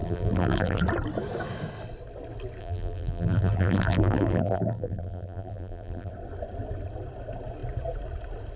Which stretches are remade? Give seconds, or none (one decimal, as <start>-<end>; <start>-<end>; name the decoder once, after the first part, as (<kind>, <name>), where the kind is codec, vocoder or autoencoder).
0.0-0.8 (vocoder, BigVGAN v2); 2.6-6.1